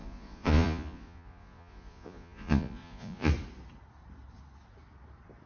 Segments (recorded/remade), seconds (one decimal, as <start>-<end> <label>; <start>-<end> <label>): 0.0-3.3 remade; 3.3-5.5 recorded